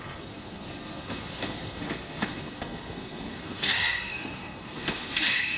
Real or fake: fake